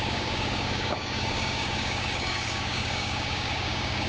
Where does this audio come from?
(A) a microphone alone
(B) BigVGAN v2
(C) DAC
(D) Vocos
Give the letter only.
C